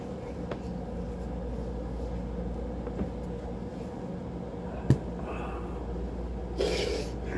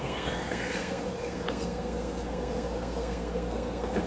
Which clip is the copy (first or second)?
second